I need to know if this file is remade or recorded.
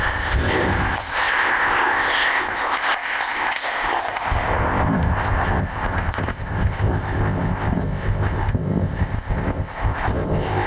remade